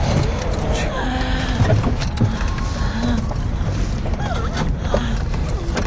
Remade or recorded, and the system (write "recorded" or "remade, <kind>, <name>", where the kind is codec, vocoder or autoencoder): recorded